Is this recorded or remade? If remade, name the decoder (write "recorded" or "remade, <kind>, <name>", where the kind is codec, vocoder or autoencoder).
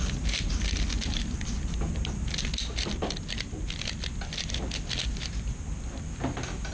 recorded